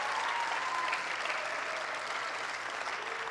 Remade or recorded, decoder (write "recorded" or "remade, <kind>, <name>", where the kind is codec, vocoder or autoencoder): recorded